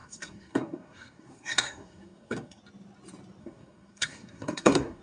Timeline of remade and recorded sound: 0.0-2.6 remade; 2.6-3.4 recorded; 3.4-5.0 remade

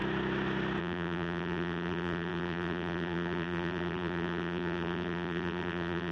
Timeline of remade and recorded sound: 0.0-0.8 recorded; 0.8-6.1 remade

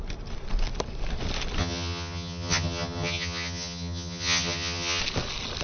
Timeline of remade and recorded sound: 0.0-1.6 recorded; 1.6-5.0 remade; 5.0-5.6 recorded

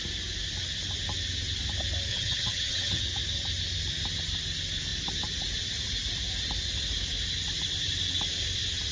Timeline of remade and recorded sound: 0.0-2.1 recorded; 2.1-3.0 remade; 3.0-8.9 recorded

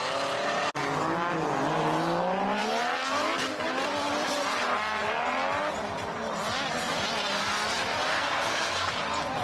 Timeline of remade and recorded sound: 0.0-8.1 recorded; 8.1-8.9 remade; 8.9-9.4 recorded

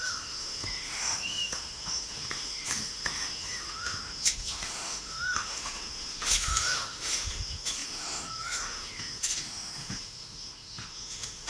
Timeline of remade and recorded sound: 0.0-11.5 remade